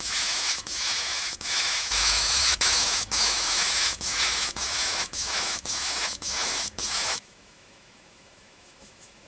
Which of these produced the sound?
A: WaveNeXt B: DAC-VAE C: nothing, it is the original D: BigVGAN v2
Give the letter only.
B